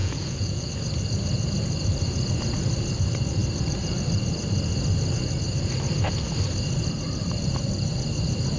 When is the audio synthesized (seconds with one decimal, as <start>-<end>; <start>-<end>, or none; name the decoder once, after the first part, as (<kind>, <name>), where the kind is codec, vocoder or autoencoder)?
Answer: 0.0-0.7 (vocoder, Vocos)